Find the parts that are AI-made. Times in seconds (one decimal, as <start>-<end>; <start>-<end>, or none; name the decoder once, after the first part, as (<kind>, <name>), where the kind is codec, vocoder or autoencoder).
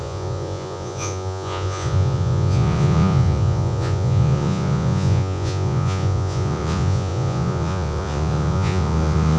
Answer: 0.0-9.4 (vocoder, Vocos)